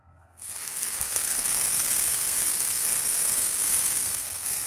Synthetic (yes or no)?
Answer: yes